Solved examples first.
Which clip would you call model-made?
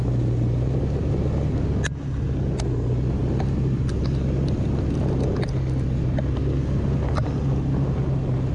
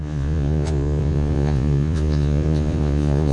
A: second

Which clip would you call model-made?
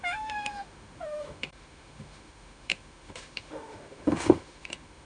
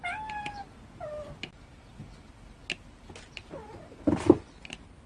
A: first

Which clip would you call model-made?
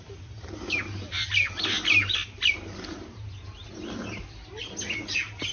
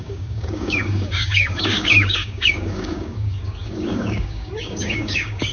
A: second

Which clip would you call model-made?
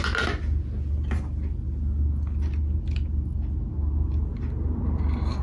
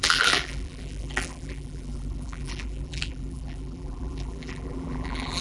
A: second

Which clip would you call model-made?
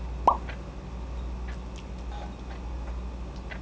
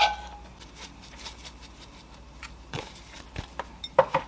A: second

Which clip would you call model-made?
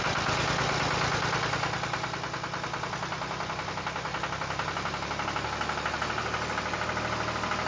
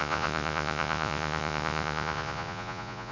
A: second